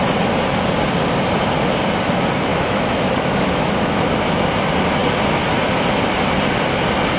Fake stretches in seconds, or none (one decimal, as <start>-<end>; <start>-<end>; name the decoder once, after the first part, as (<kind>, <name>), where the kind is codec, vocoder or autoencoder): 2.5-4.5 (autoencoder, DAC-VAE)